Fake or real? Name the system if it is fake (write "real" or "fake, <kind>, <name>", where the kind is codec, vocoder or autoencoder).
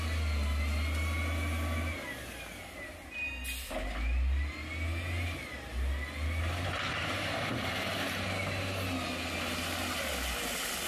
real